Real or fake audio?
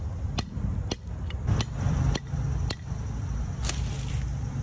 real